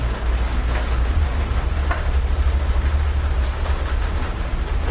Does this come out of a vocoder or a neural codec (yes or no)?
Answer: no